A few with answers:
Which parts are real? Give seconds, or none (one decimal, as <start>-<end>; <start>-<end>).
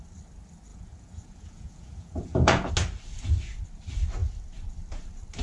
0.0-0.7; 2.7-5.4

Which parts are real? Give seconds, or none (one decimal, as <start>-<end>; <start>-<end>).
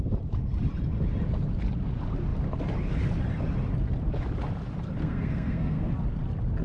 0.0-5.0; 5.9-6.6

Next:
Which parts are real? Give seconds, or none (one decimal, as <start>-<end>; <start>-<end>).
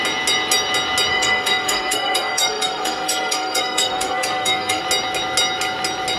0.0-1.1; 4.8-6.2